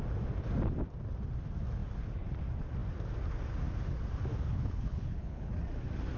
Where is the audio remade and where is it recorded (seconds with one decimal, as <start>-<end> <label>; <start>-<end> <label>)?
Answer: 0.0-4.3 recorded; 4.3-5.5 remade; 5.5-6.2 recorded